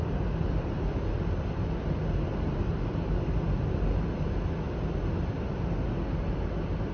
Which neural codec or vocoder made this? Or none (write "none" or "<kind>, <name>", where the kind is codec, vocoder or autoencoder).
none